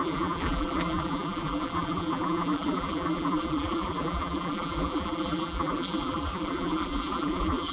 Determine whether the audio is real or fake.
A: fake